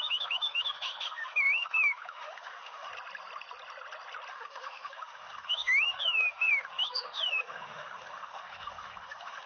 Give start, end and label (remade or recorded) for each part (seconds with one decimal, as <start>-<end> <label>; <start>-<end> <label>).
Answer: 0.0-2.9 remade; 2.9-4.3 recorded; 4.3-9.5 remade